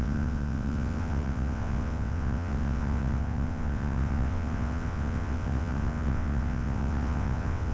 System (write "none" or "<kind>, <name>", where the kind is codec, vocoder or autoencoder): vocoder, WaveNeXt